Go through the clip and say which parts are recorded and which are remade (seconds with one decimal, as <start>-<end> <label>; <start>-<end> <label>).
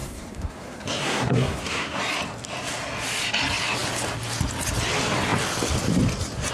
0.0-2.0 remade; 2.0-6.5 recorded